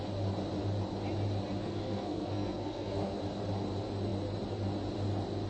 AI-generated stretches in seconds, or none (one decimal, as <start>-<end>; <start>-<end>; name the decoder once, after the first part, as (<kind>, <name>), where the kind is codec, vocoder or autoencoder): 1.6-3.2 (codec, SNAC)